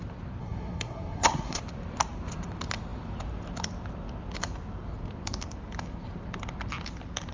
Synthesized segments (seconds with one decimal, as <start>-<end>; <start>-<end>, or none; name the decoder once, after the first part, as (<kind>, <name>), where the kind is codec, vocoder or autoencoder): 0.4-1.6 (codec, SNAC)